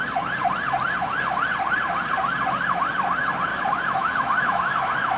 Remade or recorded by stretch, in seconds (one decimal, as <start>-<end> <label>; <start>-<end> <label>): 0.0-3.5 recorded; 3.5-5.2 remade